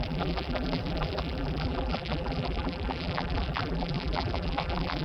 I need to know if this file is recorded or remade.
remade